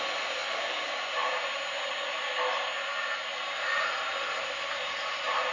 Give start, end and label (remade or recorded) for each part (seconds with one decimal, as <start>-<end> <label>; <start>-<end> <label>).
0.0-5.5 recorded